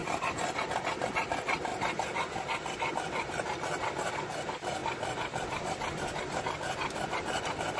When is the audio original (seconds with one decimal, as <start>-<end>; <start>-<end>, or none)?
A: 0.7-4.8; 6.4-7.8